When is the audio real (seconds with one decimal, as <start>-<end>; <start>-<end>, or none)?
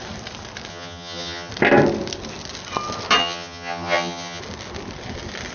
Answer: 0.0-0.7; 1.5-3.2; 4.4-5.5